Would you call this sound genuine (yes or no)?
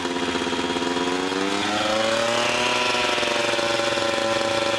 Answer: yes